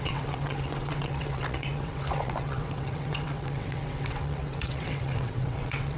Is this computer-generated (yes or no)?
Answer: yes